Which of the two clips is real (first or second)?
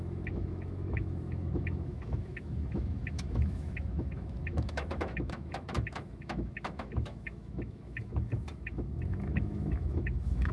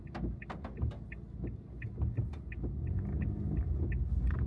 second